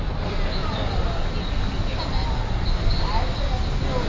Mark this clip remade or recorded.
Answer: recorded